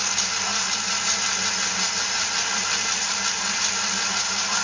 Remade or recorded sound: recorded